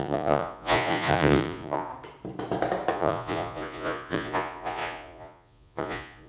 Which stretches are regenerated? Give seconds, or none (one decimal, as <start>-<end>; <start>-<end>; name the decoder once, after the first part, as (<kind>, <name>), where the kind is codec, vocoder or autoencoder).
0.0-1.9 (vocoder, Vocos); 2.9-6.3